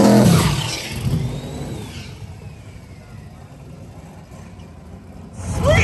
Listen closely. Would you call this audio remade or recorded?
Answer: recorded